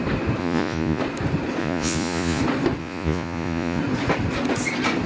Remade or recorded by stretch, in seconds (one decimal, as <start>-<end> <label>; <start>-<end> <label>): 0.0-0.4 recorded; 0.4-1.0 remade; 1.0-1.6 recorded; 1.6-2.4 remade; 2.4-2.8 recorded; 2.8-3.8 remade; 3.8-5.1 recorded